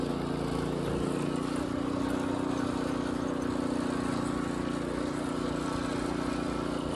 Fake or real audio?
real